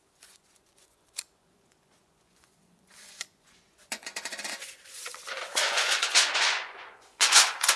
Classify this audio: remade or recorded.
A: remade